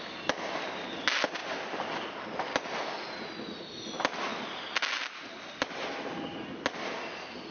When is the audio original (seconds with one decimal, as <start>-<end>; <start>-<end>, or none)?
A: 0.0-7.5